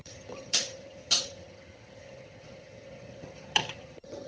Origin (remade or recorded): remade